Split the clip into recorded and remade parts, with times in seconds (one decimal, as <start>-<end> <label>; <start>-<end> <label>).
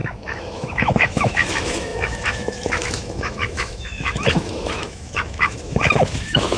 0.0-6.6 remade